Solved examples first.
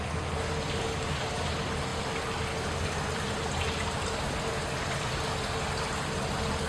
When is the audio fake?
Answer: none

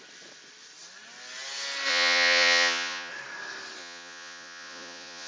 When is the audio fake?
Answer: 1.9-3.1 (vocoder, Vocos); 3.8-5.3